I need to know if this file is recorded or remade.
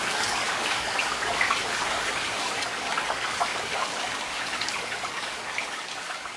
remade